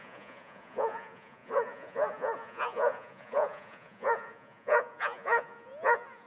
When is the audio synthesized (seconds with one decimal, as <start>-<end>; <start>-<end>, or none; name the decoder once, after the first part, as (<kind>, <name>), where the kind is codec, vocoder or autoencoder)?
0.0-6.3 (vocoder, Vocos)